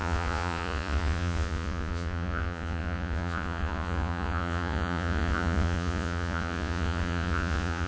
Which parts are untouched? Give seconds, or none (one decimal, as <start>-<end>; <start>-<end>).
none